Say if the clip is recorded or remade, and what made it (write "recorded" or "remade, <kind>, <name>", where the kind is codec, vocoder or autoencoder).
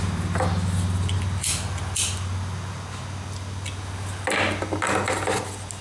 recorded